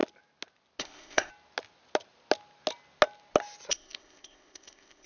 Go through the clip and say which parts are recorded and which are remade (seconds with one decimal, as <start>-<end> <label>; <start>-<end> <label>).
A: 0.0-0.8 recorded; 0.8-1.3 remade; 1.3-3.7 recorded; 3.7-5.1 remade